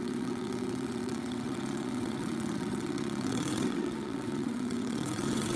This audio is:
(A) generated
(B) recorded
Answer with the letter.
A